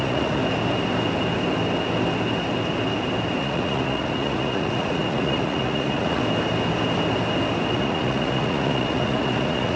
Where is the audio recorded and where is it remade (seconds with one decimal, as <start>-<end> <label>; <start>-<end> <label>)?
0.0-0.4 remade; 0.4-3.4 recorded; 3.4-6.2 remade; 6.2-7.7 recorded; 7.7-9.8 remade